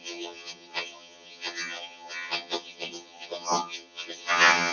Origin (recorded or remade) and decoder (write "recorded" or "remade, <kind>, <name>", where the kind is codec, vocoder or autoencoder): remade, vocoder, HiFi-GAN